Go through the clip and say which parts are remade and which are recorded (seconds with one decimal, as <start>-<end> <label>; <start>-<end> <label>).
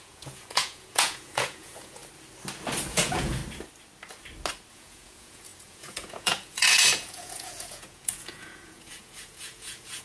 0.0-2.0 remade; 2.0-2.9 recorded; 2.9-3.4 remade; 3.4-4.7 recorded; 4.7-10.0 remade